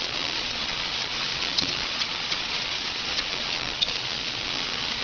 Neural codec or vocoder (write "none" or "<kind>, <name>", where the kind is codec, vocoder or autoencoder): vocoder, Vocos